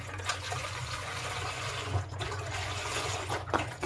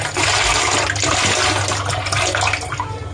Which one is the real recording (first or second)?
second